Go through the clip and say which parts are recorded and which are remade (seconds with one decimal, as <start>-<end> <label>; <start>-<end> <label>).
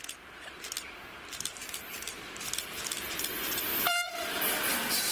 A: 0.0-1.6 recorded; 1.6-3.0 remade; 3.0-3.7 recorded; 3.7-4.4 remade; 4.4-5.1 recorded